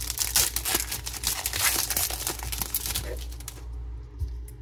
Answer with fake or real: real